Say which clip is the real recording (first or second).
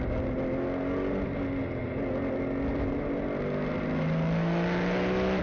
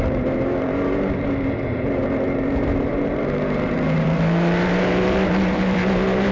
first